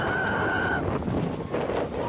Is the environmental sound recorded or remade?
recorded